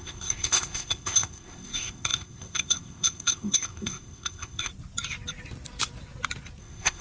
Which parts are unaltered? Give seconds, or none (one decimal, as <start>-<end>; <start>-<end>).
4.7-6.6